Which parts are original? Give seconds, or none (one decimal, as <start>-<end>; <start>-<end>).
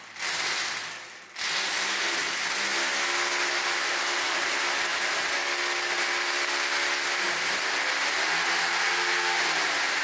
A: 0.0-10.0